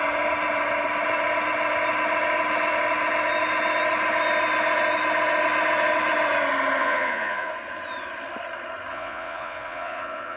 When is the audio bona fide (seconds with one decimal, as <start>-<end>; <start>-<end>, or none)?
0.0-6.8; 7.5-8.9